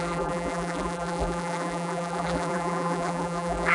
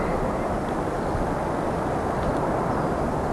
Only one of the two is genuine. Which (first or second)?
second